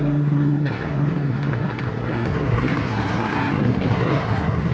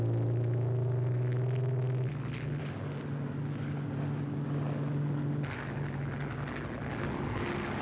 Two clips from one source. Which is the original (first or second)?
second